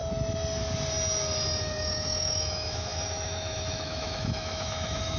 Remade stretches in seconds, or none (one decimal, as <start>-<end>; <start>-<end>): 1.8-5.2